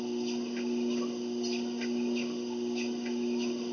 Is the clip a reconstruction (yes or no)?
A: no